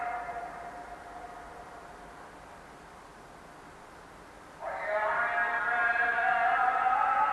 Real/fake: real